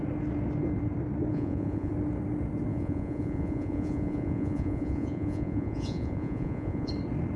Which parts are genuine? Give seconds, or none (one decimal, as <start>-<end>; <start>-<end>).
0.0-1.3; 1.9-2.7; 6.9-7.4